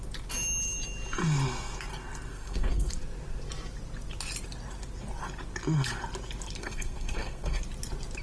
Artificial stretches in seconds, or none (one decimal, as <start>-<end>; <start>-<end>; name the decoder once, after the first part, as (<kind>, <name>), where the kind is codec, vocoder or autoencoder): 2.3-2.9 (codec, SNAC); 6.6-7.6